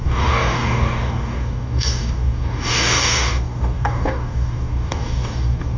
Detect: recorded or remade remade